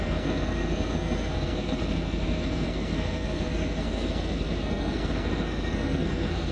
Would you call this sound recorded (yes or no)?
no